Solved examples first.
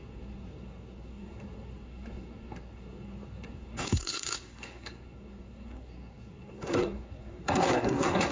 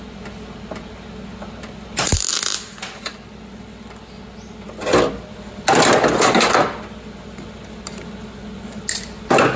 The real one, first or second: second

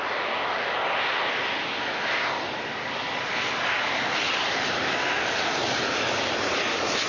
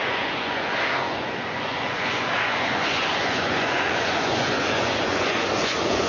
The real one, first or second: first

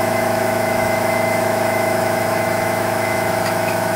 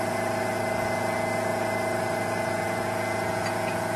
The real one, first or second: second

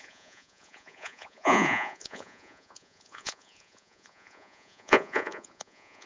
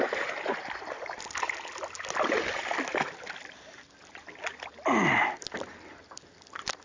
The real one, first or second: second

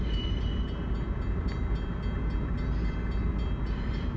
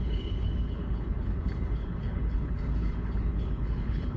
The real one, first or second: first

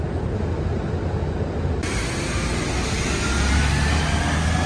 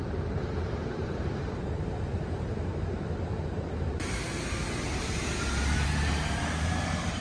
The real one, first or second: first